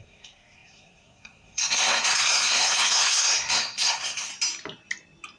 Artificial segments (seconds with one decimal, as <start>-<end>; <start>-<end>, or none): 0.0-4.3

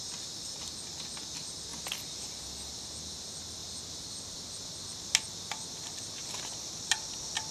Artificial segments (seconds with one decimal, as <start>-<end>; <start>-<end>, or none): none

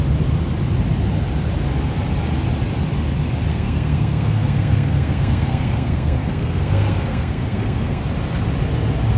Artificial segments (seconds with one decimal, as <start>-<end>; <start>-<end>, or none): 3.5-8.0

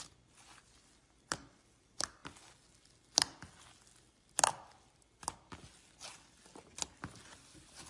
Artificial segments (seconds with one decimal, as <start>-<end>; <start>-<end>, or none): none

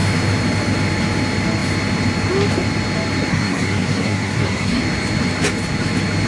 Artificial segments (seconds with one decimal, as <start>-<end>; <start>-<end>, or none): 3.3-4.8

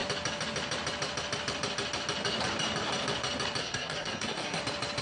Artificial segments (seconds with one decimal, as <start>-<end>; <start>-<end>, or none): 3.6-4.6

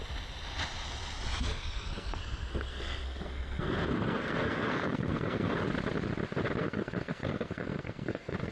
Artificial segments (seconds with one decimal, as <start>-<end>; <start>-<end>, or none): 1.4-5.6; 6.6-8.5

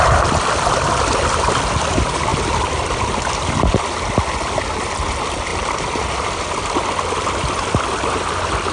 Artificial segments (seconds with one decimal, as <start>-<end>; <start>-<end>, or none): none